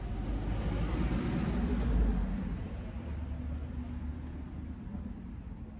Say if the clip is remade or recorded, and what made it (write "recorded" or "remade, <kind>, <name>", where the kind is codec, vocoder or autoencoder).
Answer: recorded